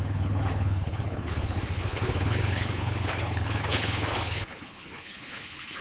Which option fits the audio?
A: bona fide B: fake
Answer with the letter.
B